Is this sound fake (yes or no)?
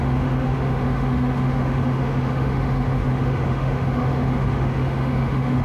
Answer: yes